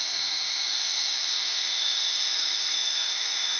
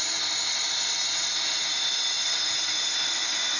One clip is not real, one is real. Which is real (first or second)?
second